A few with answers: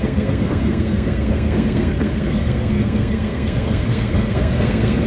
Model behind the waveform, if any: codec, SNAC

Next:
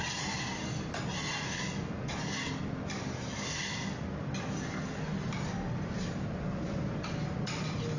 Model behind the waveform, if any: none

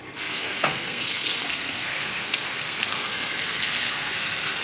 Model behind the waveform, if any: codec, SNAC